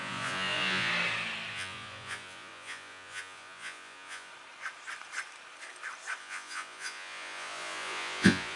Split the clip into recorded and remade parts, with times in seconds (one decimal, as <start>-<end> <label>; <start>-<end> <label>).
0.0-0.9 remade; 0.9-1.5 recorded; 1.5-4.3 remade; 4.3-6.2 recorded; 6.2-8.6 remade